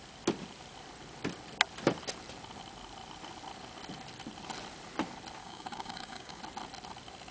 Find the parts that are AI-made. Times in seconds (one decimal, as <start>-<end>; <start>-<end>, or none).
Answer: 5.4-6.4